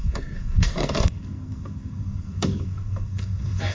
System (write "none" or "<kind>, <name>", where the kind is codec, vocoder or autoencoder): codec, SNAC